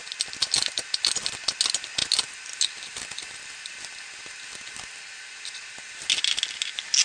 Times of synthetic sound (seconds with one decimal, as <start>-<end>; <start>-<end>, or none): none